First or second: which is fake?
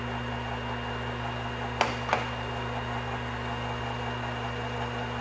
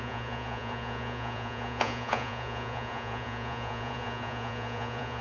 second